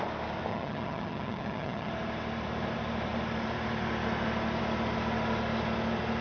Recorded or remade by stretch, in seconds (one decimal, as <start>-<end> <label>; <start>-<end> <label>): 0.0-0.5 recorded; 0.5-1.9 remade; 1.9-6.2 recorded